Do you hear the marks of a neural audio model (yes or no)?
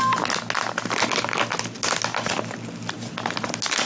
no